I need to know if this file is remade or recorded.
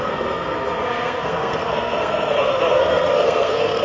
remade